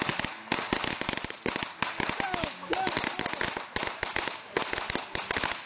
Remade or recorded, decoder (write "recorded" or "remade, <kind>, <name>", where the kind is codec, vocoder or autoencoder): recorded